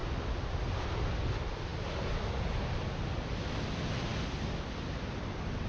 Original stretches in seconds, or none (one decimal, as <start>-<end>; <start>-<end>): 0.0-5.7